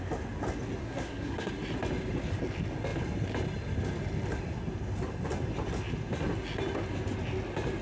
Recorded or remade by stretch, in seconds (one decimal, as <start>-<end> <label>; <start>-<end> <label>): 0.0-0.8 recorded; 0.8-1.5 remade; 1.5-7.8 recorded